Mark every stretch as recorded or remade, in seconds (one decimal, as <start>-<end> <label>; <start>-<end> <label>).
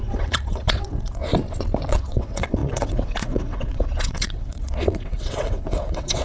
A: 0.0-1.3 remade; 1.3-1.9 recorded; 1.9-6.2 remade